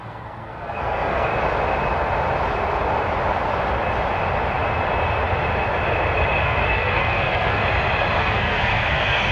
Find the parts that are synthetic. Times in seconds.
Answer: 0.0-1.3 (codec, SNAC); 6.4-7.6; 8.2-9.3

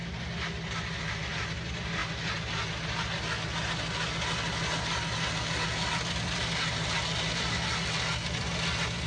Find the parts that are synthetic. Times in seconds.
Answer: none

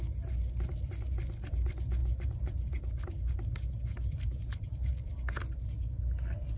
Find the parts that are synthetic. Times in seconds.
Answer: 2.0-5.1 (vocoder, BigVGAN v2)

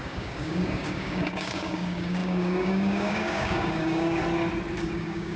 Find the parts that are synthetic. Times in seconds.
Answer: 0.0-4.2 (codec, DAC); 4.8-5.4

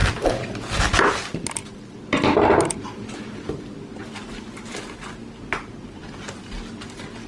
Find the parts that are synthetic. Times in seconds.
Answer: none

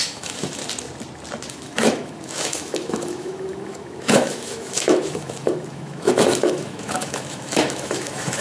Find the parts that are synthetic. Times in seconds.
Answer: 0.0-0.6 (autoencoder, DAC-VAE); 1.5-8.4